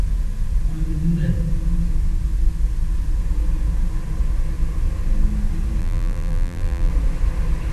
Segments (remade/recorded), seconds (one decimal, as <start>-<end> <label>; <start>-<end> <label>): 0.0-5.8 recorded; 5.8-6.9 remade; 6.9-7.7 recorded